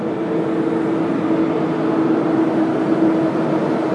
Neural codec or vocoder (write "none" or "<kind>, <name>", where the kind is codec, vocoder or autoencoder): none